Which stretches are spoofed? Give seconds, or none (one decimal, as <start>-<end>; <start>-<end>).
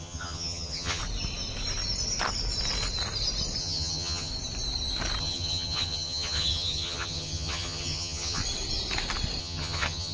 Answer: 0.0-1.0; 3.6-4.3; 5.2-8.4; 9.4-10.1